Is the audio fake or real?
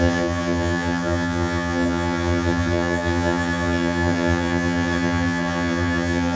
fake